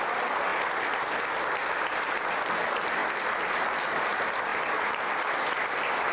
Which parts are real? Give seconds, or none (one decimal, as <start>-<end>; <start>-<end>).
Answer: 0.0-4.5; 5.0-6.1